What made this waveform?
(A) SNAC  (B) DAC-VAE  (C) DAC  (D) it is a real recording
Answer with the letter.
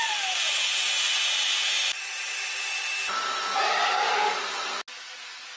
D